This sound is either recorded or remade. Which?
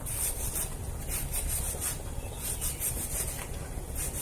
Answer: recorded